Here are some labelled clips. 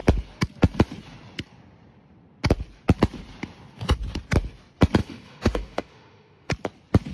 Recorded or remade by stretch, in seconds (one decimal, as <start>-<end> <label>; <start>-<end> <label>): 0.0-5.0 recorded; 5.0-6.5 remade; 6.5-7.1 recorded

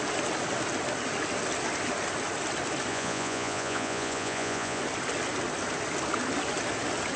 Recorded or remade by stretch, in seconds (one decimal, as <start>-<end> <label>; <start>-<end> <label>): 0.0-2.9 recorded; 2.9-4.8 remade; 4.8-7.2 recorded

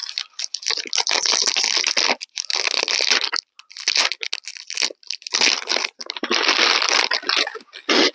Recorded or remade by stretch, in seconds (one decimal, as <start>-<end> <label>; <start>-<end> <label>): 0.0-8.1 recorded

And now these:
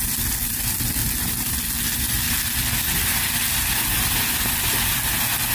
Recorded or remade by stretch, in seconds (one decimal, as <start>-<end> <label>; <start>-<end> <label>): 0.0-5.5 recorded

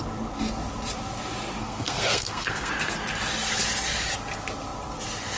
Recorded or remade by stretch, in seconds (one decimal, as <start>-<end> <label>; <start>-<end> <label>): 0.0-1.6 recorded; 1.6-2.7 remade; 2.7-5.4 recorded

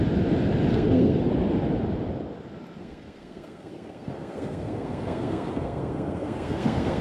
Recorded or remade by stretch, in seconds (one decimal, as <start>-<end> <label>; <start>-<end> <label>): 0.0-0.7 recorded; 0.7-1.2 remade; 1.2-2.8 recorded; 2.8-7.0 remade